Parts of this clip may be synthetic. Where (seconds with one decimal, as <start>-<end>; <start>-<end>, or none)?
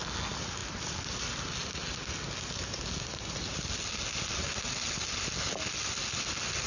none